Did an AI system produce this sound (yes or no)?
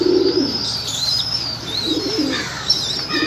yes